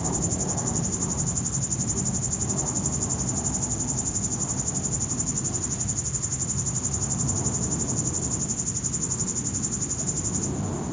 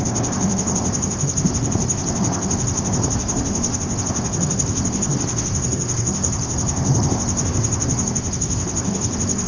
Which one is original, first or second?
first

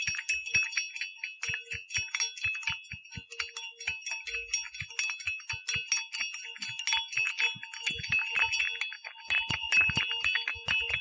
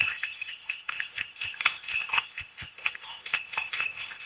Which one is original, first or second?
first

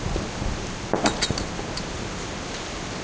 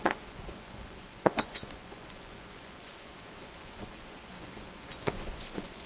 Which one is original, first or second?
first